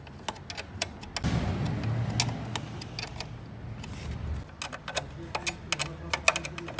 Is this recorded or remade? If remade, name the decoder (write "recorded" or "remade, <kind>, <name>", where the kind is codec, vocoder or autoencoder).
recorded